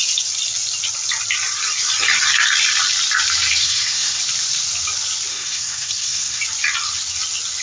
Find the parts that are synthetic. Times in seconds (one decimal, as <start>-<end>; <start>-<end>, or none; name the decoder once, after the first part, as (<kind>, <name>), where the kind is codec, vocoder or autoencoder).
3.6-4.2 (codec, SNAC); 5.3-6.4